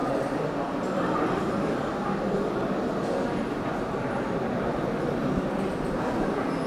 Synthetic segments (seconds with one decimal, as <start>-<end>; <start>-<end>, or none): 0.6-6.7